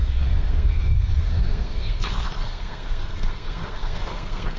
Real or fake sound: fake